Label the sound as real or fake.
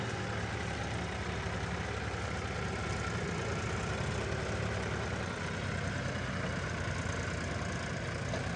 real